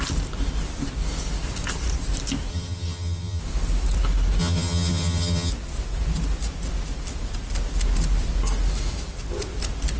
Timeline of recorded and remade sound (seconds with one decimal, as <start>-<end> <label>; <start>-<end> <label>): 0.0-2.5 recorded; 2.5-3.4 remade; 3.4-4.4 recorded; 4.4-5.5 remade; 5.5-10.0 recorded